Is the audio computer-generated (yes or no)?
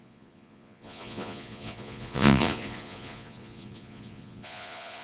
yes